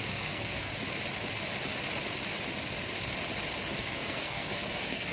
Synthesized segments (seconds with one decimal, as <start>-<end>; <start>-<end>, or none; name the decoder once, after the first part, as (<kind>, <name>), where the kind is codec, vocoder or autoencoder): 0.0-0.7 (codec, SNAC); 3.8-5.1